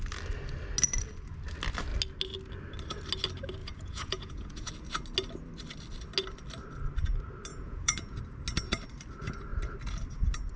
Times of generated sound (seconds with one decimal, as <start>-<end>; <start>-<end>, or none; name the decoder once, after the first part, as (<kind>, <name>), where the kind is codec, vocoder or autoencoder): 3.6-4.7 (vocoder, Vocos); 7.5-8.2